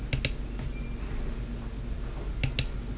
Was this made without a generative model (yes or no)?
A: yes